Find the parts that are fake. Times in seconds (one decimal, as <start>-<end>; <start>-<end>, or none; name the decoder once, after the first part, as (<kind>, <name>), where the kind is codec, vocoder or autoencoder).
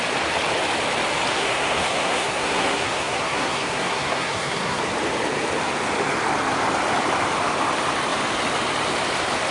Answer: 1.3-4.8 (codec, SNAC)